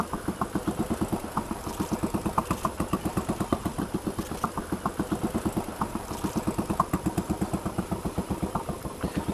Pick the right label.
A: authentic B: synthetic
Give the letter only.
A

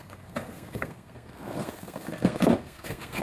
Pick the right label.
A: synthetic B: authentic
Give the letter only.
A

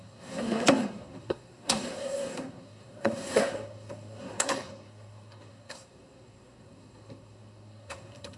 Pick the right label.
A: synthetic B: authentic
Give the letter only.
A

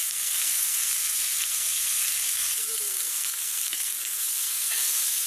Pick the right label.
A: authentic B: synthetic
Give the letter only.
B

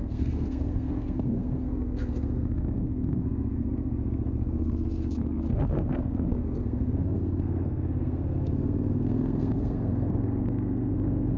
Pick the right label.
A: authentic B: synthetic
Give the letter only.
B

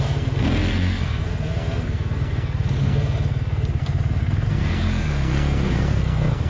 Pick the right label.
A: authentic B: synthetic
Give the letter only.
B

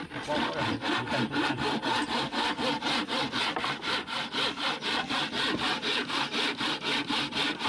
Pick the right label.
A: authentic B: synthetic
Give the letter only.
A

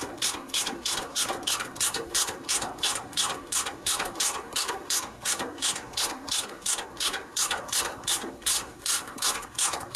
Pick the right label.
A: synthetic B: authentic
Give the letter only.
A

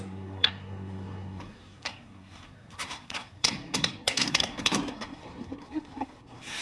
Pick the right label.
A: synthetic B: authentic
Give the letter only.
A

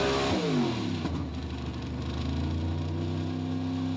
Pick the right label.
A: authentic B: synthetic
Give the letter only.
A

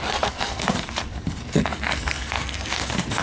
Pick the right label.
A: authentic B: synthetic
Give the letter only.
B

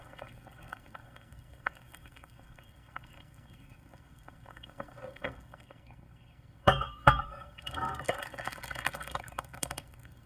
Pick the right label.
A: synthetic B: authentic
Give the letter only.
A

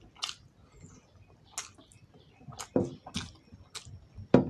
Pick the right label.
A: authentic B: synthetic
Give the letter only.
A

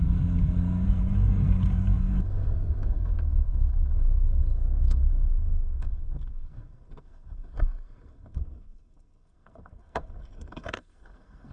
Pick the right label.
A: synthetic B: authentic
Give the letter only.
A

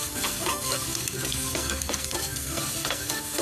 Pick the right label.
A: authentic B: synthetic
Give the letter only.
B